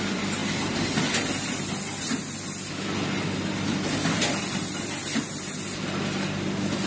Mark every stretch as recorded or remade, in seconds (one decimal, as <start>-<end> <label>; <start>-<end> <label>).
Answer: 0.0-6.9 recorded